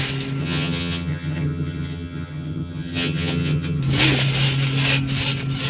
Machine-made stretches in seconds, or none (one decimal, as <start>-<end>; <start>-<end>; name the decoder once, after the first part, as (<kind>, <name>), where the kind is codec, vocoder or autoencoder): 0.4-3.8 (vocoder, HiFi-GAN)